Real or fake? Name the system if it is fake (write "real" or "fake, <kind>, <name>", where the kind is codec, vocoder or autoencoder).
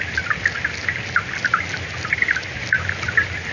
real